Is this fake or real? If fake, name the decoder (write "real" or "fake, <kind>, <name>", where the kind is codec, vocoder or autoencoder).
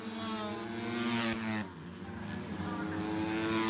real